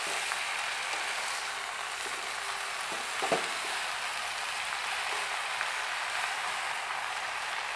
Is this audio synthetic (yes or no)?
no